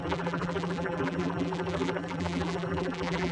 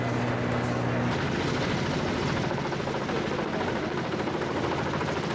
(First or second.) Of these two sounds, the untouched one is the second